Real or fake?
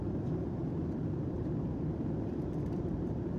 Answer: fake